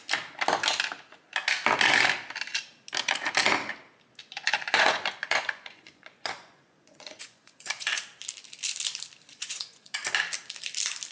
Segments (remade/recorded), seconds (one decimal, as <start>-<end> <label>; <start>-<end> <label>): 0.0-4.2 recorded; 4.2-8.0 remade; 8.0-9.3 recorded; 9.3-10.0 remade; 10.0-11.1 recorded